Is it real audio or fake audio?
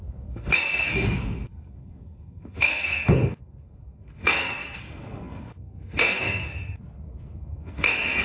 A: fake